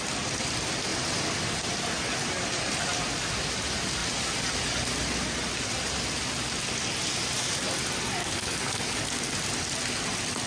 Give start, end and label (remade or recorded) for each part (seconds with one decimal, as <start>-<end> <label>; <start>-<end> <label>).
0.0-8.2 recorded; 8.2-9.2 remade; 9.2-10.5 recorded

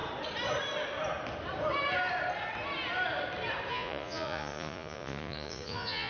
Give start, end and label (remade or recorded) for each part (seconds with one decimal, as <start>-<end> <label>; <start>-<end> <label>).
0.0-3.7 recorded; 3.7-6.1 remade

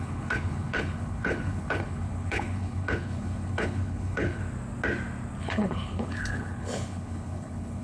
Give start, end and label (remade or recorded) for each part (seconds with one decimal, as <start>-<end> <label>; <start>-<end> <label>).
0.0-4.4 remade; 4.4-5.4 recorded; 5.4-7.8 remade

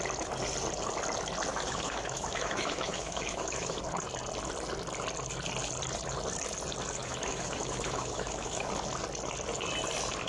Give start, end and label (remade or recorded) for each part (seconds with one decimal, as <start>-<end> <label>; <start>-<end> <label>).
0.0-1.5 recorded; 1.5-3.8 remade; 3.8-7.0 recorded; 7.0-8.7 remade; 8.7-10.3 recorded

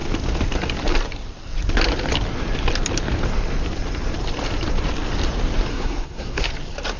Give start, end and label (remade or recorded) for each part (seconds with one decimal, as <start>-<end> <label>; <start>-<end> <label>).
0.0-5.7 recorded; 5.7-6.5 remade; 6.5-7.0 recorded

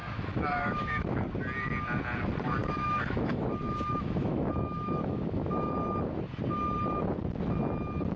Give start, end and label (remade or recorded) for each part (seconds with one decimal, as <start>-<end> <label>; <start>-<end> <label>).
0.0-1.3 remade; 1.3-2.6 recorded; 2.6-5.7 remade; 5.7-8.2 recorded